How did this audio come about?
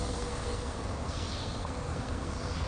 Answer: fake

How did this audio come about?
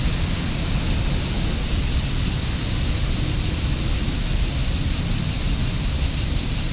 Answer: real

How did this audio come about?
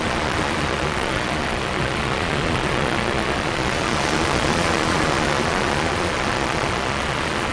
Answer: fake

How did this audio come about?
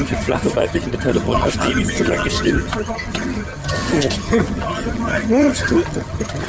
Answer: fake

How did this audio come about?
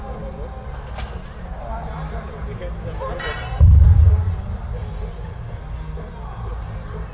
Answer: real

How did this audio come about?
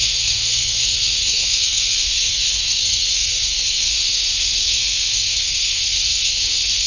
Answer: fake